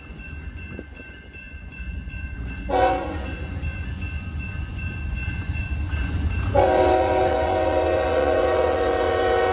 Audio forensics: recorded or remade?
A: remade